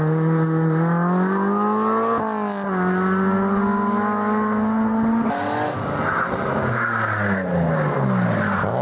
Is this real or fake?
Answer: real